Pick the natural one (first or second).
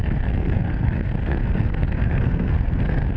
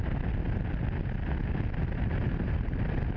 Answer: second